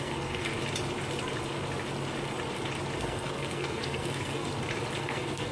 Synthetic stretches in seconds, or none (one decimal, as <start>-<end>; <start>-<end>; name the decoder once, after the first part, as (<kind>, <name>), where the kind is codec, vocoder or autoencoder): 0.0-0.5 (codec, SNAC); 3.0-4.5; 5.0-5.5